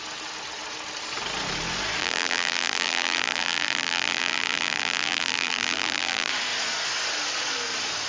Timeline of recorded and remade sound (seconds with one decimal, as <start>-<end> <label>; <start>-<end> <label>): 0.0-2.0 recorded; 2.0-6.3 remade; 6.3-8.1 recorded